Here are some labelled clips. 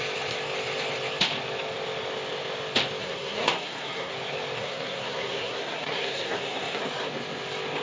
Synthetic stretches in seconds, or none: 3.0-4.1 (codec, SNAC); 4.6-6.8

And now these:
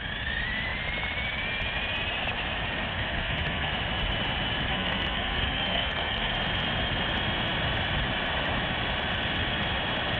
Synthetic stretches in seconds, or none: 2.9-3.7 (codec, SNAC); 4.7-6.3

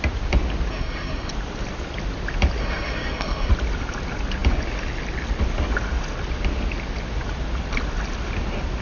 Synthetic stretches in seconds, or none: 0.7-1.3 (codec, SNAC); 2.6-3.5

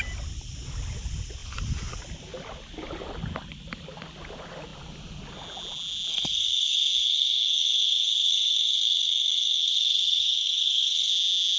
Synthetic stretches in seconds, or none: 6.1-11.1 (codec, SNAC)